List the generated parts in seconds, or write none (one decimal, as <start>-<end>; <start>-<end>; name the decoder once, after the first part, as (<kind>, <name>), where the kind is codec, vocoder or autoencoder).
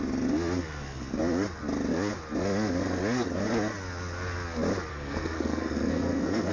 4.9-6.5 (codec, SNAC)